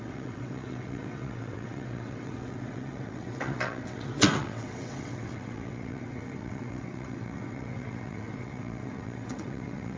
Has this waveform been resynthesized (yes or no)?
yes